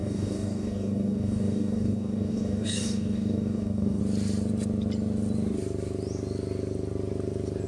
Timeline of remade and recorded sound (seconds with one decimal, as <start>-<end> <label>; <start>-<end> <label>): 0.0-4.0 remade; 4.0-7.7 recorded